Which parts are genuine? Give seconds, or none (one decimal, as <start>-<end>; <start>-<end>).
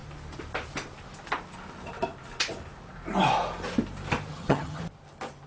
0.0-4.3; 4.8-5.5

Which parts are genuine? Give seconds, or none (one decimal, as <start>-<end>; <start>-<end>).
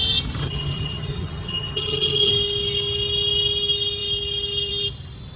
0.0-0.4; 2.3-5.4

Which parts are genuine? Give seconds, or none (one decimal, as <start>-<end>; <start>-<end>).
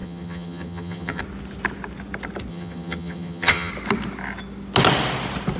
1.2-2.5; 3.7-5.6